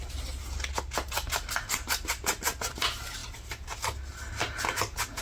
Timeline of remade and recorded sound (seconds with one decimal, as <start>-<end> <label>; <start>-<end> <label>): 0.0-5.2 recorded